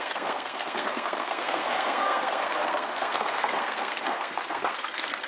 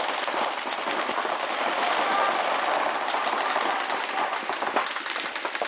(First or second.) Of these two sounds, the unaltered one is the second